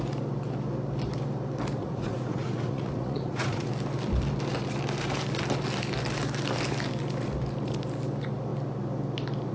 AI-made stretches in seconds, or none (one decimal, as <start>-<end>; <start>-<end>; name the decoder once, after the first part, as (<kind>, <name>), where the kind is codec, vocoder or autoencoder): 1.8-3.7 (vocoder, Vocos)